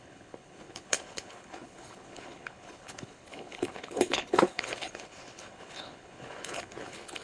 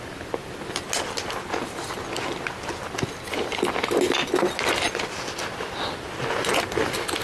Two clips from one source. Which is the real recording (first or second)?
second